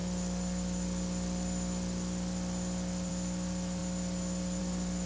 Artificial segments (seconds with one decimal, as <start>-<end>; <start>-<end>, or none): none